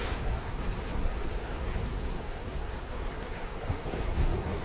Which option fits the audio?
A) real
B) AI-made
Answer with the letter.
B